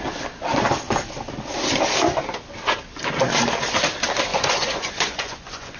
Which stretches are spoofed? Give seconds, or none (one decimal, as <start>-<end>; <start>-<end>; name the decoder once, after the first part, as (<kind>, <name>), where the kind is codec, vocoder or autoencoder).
4.3-5.8 (vocoder, Vocos)